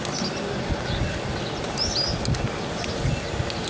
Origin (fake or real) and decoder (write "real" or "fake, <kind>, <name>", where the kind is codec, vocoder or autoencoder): real